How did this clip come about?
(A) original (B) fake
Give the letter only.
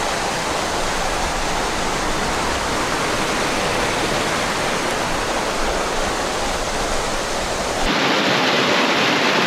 A